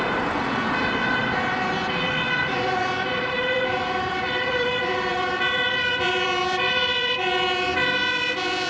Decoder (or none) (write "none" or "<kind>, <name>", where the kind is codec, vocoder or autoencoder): vocoder, BigVGAN v2